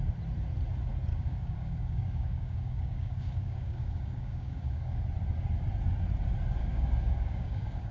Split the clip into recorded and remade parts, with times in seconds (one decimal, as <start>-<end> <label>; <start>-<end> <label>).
0.0-1.1 recorded; 1.1-5.0 remade; 5.0-6.6 recorded; 6.6-7.9 remade